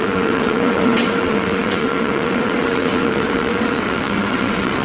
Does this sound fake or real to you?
fake